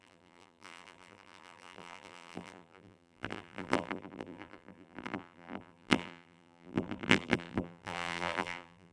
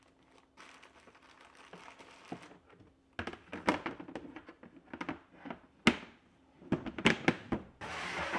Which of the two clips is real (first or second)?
second